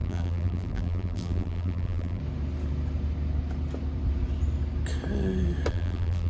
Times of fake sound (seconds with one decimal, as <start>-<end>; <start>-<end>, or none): 0.0-2.2; 5.7-6.3